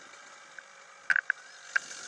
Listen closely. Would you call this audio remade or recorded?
recorded